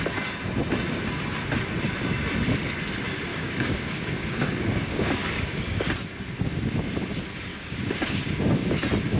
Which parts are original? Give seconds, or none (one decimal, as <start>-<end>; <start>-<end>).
0.0-3.3; 5.9-7.5; 8.7-9.2